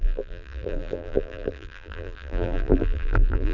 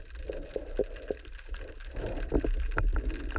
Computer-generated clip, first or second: first